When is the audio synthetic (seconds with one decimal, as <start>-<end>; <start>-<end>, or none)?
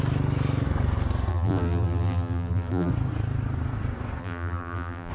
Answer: 1.3-2.9; 4.2-5.1